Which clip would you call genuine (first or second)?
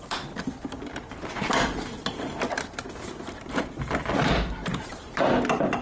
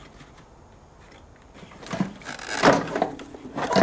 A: second